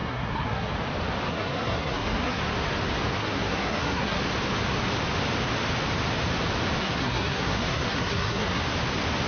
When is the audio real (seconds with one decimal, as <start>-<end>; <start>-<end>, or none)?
0.7-1.3; 2.4-3.2; 4.2-6.8; 8.6-9.3